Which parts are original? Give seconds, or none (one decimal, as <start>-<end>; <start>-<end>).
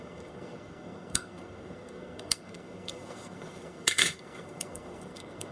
none